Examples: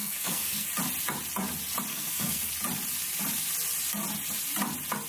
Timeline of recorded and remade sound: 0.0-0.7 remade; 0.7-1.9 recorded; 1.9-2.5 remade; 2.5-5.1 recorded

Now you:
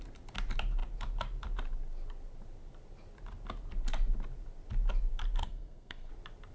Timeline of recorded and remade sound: 0.0-5.4 recorded; 5.4-6.1 remade; 6.1-6.5 recorded

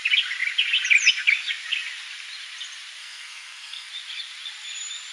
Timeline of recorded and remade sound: 0.0-3.0 recorded; 3.0-3.9 remade; 3.9-5.1 recorded